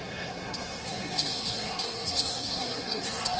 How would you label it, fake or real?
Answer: fake